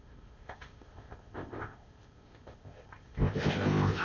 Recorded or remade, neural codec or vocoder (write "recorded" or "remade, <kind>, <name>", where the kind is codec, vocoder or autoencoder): remade, codec, ZipCodec